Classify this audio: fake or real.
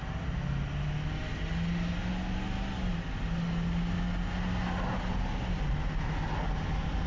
real